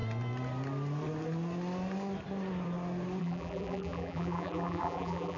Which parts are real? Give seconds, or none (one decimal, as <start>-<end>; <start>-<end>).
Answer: 0.0-3.2